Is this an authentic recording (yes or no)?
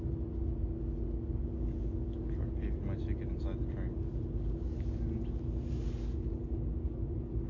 yes